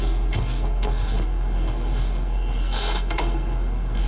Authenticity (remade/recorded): remade